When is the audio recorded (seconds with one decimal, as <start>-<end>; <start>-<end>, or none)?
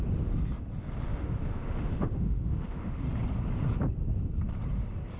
0.0-1.1; 3.0-5.2